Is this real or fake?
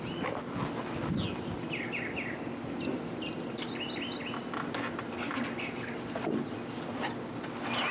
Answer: real